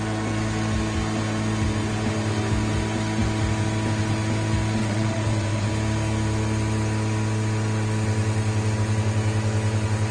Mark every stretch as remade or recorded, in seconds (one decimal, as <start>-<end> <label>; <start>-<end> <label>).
0.0-4.8 recorded; 4.8-5.7 remade; 5.7-10.1 recorded